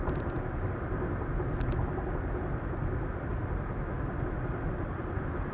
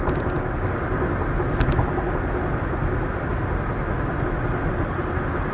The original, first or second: second